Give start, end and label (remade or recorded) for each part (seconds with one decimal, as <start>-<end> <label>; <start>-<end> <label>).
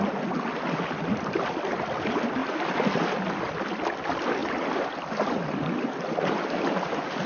0.0-7.3 recorded